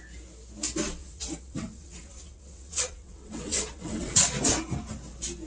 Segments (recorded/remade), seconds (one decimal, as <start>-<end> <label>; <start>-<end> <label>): 0.0-1.0 recorded; 1.0-4.3 remade; 4.3-5.5 recorded